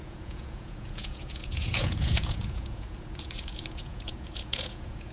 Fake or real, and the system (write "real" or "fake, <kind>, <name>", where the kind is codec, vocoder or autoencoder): fake, vocoder, Vocos